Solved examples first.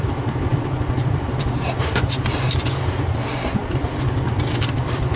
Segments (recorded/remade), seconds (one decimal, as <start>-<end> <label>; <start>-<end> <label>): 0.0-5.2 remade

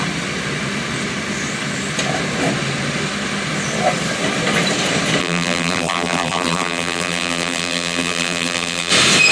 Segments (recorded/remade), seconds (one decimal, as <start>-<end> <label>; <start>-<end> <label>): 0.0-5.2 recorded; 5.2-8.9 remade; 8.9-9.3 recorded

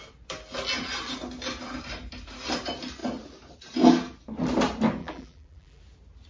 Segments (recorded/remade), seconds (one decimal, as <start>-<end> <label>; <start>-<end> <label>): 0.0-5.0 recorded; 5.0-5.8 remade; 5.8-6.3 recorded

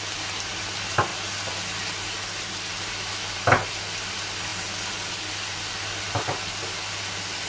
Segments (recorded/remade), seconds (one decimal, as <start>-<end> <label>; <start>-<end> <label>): 0.0-4.5 remade; 4.5-5.1 recorded; 5.1-7.5 remade

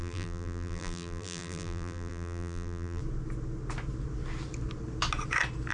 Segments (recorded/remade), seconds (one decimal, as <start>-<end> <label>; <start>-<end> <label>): 0.0-3.0 remade; 3.0-5.7 recorded

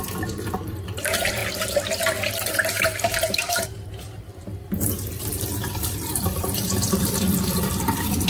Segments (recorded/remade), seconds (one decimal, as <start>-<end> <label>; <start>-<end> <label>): 0.0-1.4 remade; 1.4-2.7 recorded; 2.7-8.3 remade

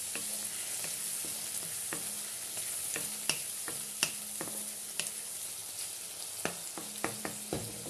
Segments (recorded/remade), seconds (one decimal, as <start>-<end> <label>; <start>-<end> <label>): 0.0-7.9 recorded

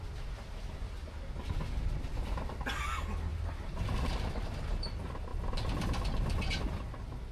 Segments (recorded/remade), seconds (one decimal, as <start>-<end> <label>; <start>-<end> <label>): 0.0-3.3 recorded; 3.3-4.3 remade; 4.3-5.3 recorded; 5.3-6.5 remade; 6.5-7.3 recorded